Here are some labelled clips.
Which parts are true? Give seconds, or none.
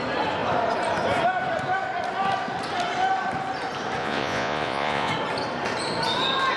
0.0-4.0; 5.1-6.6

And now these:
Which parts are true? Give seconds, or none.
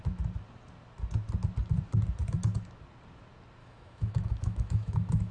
0.0-3.6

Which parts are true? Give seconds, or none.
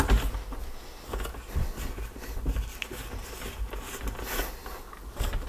0.0-5.5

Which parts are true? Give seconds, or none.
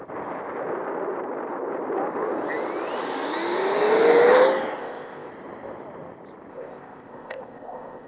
0.0-4.8; 5.3-6.5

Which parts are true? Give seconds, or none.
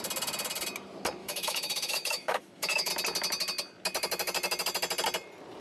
0.0-1.2; 2.9-5.6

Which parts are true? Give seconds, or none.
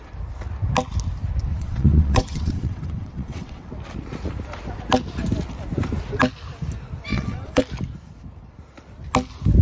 0.0-1.5; 3.7-7.1; 7.6-9.6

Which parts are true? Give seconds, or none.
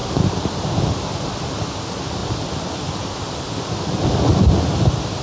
0.9-2.2; 3.7-5.2